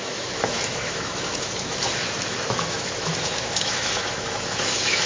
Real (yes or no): no